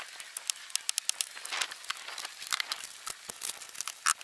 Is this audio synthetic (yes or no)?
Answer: no